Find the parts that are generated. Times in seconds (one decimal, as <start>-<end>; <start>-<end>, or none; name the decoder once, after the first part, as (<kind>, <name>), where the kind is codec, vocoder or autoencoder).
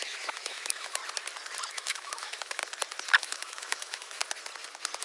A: 0.0-1.0 (autoencoder, DAC-VAE); 1.7-2.6; 3.2-4.2